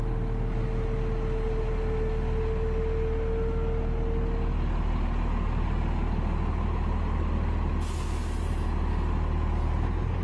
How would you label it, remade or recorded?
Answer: recorded